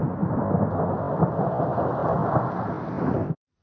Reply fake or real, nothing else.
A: real